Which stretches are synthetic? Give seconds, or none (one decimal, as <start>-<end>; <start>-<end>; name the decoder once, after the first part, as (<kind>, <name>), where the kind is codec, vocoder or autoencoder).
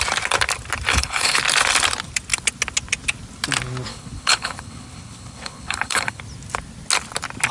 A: 0.9-1.4 (codec, HILCodec); 3.9-6.2